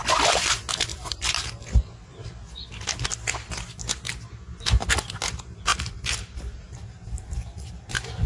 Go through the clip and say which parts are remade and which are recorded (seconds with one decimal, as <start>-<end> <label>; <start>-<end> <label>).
0.0-0.9 recorded; 0.9-1.5 remade; 1.5-5.7 recorded; 5.7-7.7 remade; 7.7-8.3 recorded